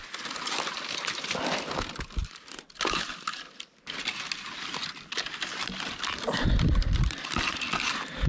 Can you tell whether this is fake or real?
real